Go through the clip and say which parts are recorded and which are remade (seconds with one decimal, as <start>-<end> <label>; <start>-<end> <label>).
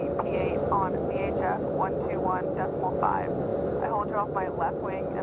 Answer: 0.0-5.2 recorded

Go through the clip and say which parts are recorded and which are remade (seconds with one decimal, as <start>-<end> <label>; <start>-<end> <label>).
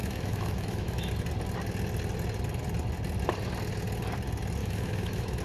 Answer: 0.0-1.1 remade; 1.1-4.6 recorded; 4.6-5.4 remade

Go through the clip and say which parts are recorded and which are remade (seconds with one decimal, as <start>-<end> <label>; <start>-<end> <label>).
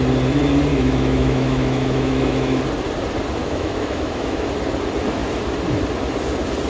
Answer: 0.0-0.7 recorded; 0.7-2.6 remade; 2.6-3.4 recorded; 3.4-4.5 remade; 4.5-6.7 recorded